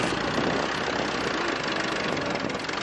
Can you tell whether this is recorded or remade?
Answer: recorded